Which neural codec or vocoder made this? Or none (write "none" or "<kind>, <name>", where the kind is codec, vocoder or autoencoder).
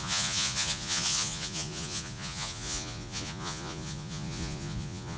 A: vocoder, Vocos